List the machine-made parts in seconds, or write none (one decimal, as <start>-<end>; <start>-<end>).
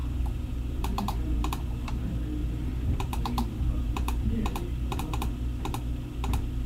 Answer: 0.0-2.0; 2.4-5.3